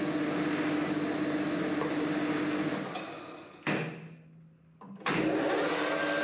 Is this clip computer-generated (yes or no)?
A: no